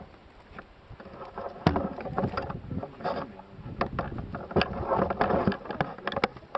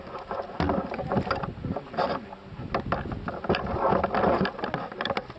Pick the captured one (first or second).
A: first